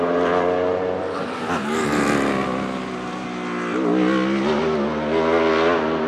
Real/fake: real